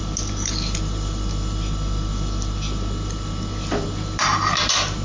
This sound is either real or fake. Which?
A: real